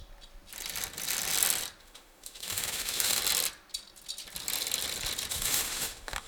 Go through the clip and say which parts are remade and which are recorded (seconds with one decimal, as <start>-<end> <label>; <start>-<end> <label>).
0.0-1.8 recorded; 1.8-3.2 remade; 3.2-5.3 recorded; 5.3-6.3 remade